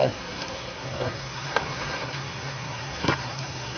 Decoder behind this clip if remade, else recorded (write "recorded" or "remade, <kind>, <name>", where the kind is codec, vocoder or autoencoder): remade, codec, SNAC